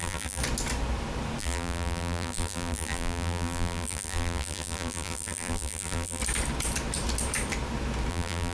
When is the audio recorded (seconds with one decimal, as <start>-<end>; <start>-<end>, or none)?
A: 0.4-1.4; 6.2-8.1